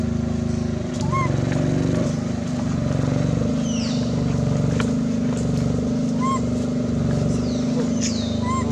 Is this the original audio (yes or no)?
yes